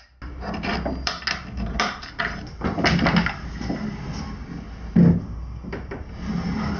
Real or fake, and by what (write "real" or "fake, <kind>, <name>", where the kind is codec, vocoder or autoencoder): real